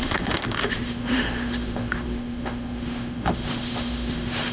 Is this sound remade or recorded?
remade